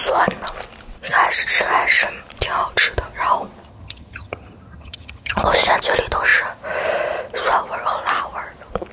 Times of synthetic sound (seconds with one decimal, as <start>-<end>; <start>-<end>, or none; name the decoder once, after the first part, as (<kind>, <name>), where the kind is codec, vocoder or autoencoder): 3.7-5.4 (vocoder, HiFi-GAN)